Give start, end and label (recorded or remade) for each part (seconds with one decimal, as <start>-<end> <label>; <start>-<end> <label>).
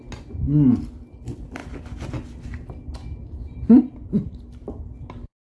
0.0-5.5 recorded